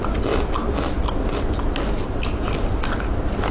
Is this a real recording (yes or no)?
yes